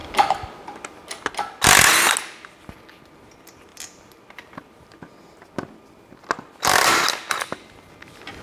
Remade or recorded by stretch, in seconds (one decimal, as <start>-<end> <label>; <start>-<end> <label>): 0.0-3.7 recorded; 3.7-7.4 remade; 7.4-8.4 recorded